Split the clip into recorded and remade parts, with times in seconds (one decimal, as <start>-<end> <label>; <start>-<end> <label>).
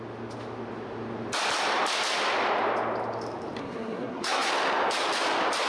0.0-3.6 recorded; 3.6-4.5 remade; 4.5-5.7 recorded